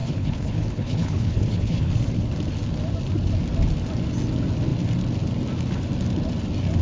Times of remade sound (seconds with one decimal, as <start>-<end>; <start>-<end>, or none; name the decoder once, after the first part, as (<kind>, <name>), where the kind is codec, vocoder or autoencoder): 0.0-1.9 (codec, HILCodec)